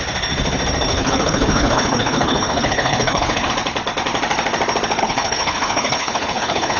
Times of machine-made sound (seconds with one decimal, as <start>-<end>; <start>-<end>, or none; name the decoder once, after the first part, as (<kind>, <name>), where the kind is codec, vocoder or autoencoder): 0.9-3.5 (codec, HILCodec); 5.0-6.8